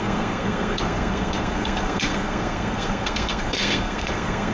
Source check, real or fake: fake